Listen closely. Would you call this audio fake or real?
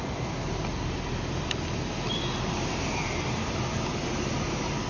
real